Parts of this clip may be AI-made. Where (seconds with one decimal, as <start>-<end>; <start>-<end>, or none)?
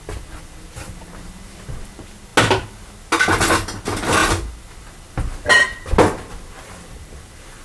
none